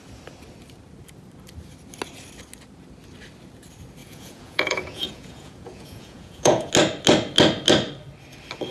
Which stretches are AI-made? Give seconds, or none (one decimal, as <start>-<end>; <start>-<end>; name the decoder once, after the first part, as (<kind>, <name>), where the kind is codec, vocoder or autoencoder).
4.0-6.7 (vocoder, Vocos)